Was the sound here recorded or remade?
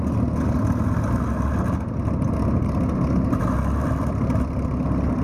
recorded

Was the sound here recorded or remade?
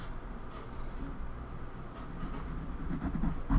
recorded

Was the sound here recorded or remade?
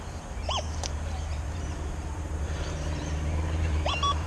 remade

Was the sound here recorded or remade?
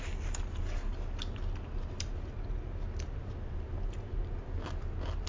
recorded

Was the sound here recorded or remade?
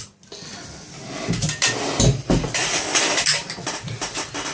recorded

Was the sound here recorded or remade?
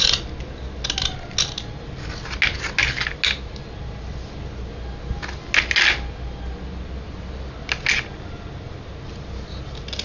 recorded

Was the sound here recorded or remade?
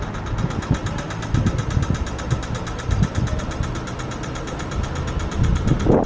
recorded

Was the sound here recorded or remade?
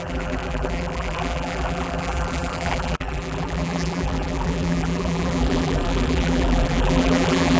remade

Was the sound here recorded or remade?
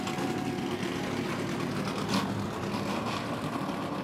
recorded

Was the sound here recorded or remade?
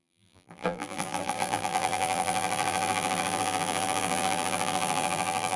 remade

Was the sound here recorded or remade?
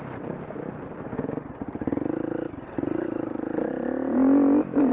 remade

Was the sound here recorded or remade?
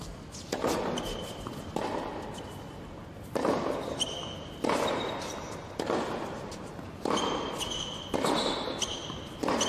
recorded